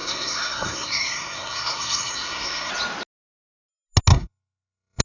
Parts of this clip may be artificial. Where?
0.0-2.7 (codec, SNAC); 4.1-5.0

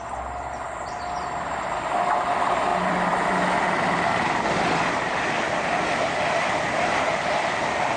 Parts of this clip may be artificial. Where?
none